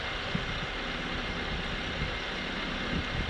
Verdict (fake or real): real